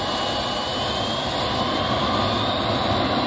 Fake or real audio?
real